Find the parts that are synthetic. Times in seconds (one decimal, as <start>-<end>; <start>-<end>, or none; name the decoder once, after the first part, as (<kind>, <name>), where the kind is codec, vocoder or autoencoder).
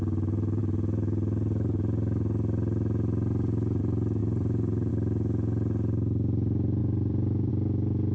4.2-4.9 (vocoder, BigVGAN v2); 6.8-7.5